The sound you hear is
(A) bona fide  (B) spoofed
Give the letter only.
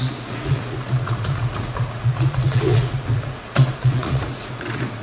B